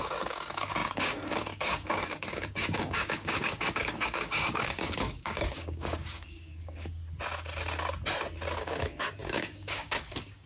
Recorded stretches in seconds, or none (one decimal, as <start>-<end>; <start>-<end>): 7.0-8.6

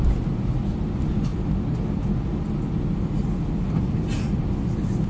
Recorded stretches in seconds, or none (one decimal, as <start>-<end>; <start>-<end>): 0.0-5.1

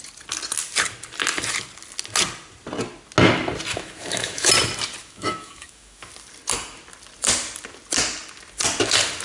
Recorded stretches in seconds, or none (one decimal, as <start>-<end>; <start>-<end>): 0.0-3.7; 4.5-5.0; 6.1-9.2

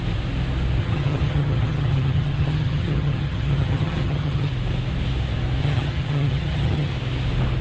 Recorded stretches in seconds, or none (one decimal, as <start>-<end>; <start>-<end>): 0.0-0.8; 4.5-5.6; 6.9-7.6

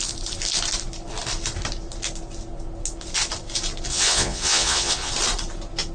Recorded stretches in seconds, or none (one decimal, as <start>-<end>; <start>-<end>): 0.0-3.9; 5.1-5.9

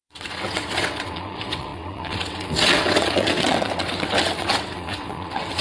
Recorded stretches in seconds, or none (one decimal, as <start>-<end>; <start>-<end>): none

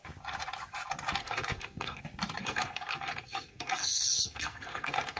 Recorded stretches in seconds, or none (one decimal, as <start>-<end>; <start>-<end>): 0.0-1.2; 2.0-2.4